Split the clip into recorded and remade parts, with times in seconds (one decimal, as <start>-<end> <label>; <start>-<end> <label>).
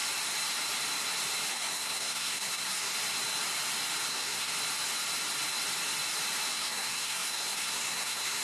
0.0-1.5 recorded; 1.5-2.9 remade; 2.9-4.1 recorded; 4.1-4.5 remade; 4.5-6.5 recorded; 6.5-8.4 remade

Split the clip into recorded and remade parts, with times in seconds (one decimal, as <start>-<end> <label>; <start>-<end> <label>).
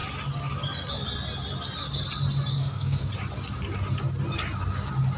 0.0-2.5 recorded; 2.5-3.1 remade; 3.1-5.2 recorded